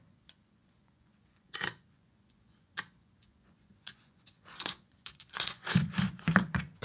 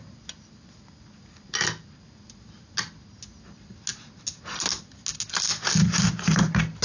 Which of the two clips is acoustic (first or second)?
second